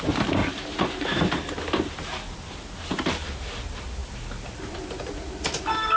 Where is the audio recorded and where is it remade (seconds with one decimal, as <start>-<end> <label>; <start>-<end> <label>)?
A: 0.0-6.0 recorded